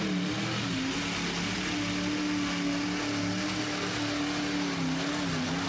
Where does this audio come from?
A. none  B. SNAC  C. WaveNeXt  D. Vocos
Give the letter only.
A